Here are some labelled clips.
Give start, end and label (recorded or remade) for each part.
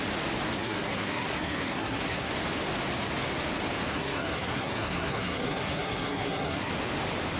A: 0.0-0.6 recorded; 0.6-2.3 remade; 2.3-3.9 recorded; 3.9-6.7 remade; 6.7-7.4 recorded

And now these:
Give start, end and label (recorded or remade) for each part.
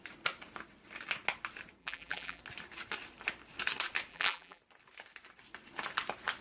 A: 0.0-1.8 recorded; 1.8-2.4 remade; 2.4-4.1 recorded; 4.1-4.6 remade; 4.6-6.4 recorded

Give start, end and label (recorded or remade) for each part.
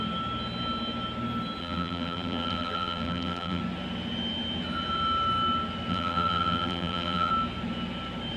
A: 0.0-1.6 recorded; 1.6-3.6 remade; 3.6-5.9 recorded; 5.9-7.3 remade; 7.3-8.4 recorded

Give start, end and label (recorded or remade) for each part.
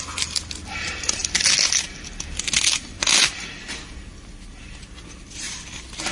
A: 0.0-6.1 recorded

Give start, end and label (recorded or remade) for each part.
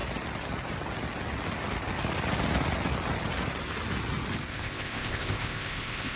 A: 0.0-4.5 recorded; 4.5-6.2 remade